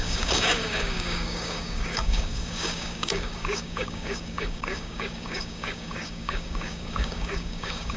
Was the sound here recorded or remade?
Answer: remade